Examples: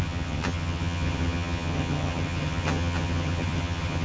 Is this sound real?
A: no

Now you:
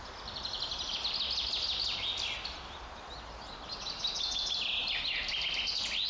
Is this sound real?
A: yes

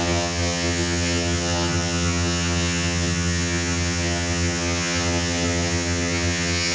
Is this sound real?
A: no